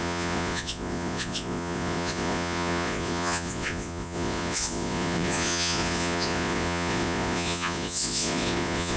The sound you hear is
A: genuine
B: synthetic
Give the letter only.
B